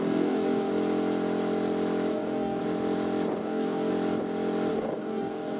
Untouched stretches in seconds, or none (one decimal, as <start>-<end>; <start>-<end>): 0.7-2.1; 2.6-3.4; 3.9-4.7

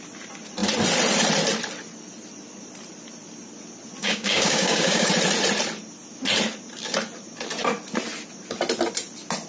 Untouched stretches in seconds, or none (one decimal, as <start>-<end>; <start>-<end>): 0.0-4.0; 5.1-9.5

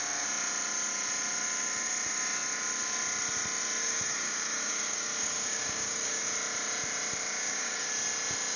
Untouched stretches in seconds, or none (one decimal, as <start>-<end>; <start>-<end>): 0.0-3.8; 6.2-7.3; 7.9-8.6